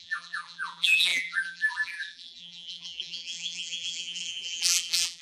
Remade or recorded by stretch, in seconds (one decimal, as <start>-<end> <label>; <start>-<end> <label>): 0.0-5.2 remade